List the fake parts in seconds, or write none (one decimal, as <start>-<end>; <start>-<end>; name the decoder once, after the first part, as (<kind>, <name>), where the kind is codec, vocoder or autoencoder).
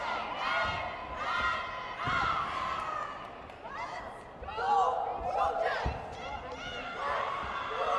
none